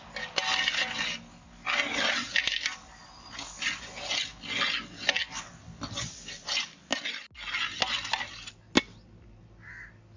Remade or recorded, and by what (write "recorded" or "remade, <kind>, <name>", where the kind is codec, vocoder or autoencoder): recorded